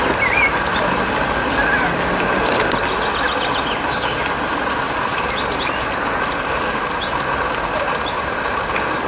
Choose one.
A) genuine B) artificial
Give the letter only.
A